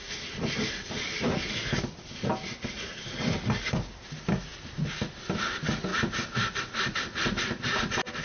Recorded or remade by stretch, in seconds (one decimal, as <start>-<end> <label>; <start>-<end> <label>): 0.0-8.2 recorded